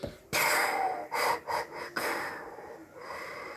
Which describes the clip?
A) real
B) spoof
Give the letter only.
A